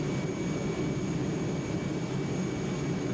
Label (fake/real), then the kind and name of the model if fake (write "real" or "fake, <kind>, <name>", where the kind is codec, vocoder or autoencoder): real